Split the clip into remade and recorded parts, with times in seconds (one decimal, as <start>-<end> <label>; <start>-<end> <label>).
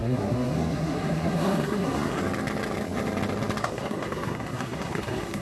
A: 0.0-2.2 remade; 2.2-3.6 recorded; 3.6-5.4 remade